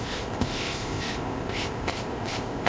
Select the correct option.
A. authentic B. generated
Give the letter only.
B